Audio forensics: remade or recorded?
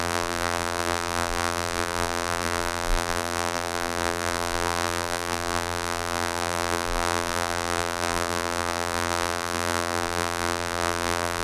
remade